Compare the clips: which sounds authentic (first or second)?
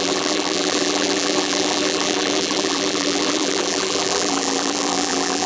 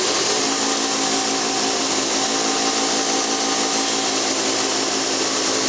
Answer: second